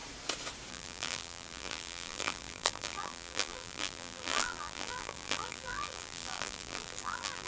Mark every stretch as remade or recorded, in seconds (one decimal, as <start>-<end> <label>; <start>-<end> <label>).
0.0-0.7 recorded; 0.7-7.5 remade